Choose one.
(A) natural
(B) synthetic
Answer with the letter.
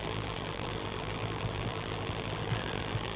B